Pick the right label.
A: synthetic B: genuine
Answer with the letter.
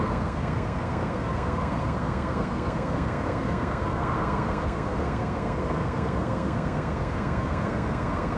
A